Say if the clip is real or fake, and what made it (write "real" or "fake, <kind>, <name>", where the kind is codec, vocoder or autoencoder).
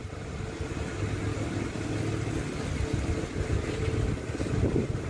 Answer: real